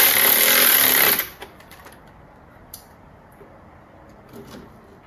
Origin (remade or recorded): remade